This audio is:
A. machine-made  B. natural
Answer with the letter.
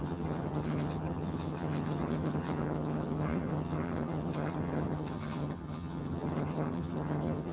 A